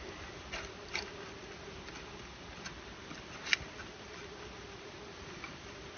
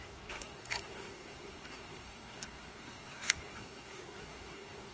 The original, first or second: first